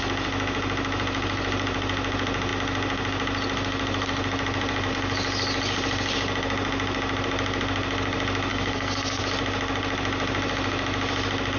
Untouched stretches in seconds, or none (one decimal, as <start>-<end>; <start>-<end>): 0.0-8.5; 9.2-11.6